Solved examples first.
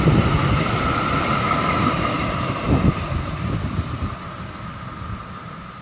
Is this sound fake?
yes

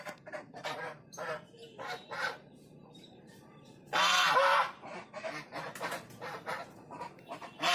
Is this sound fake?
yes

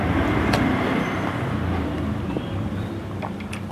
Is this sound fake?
yes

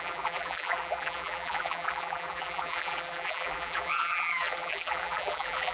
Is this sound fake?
yes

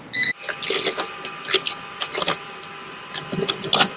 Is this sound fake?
no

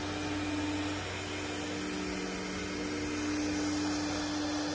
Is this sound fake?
no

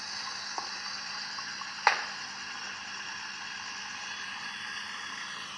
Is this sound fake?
no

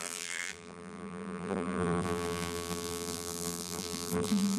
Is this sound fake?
yes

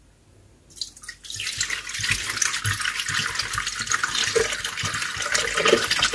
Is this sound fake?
no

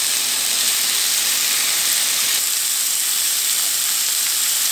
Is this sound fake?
no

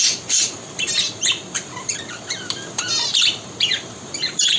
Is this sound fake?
yes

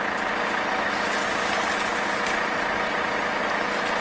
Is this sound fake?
no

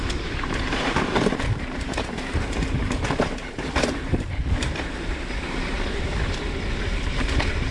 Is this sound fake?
yes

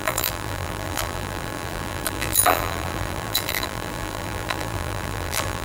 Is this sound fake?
yes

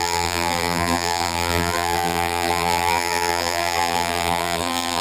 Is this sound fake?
yes